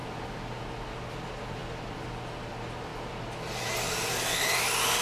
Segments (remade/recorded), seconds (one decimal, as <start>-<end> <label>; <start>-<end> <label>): 0.0-5.0 recorded